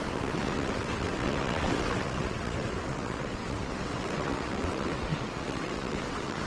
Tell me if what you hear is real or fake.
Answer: fake